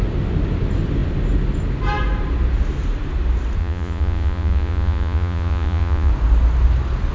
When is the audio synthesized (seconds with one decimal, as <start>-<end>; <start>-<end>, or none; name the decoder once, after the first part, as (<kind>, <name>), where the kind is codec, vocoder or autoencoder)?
3.6-6.1 (vocoder, Vocos)